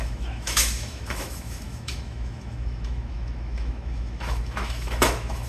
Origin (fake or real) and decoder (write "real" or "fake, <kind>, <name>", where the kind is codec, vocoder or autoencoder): fake, autoencoder, DAC-VAE